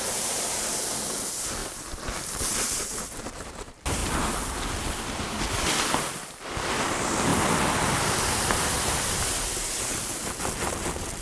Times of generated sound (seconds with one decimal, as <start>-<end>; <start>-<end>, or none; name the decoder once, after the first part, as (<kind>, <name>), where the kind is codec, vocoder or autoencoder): 0.0-4.0 (vocoder, BigVGAN v2); 6.0-7.3; 9.8-11.2